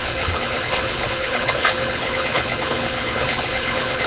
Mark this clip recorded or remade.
remade